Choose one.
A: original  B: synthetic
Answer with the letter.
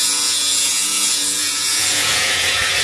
B